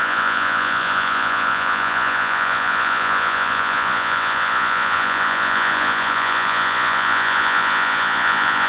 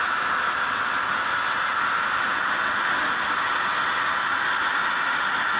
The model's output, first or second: first